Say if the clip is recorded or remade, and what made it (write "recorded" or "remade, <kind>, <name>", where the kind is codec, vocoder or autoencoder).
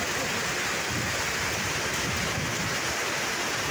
recorded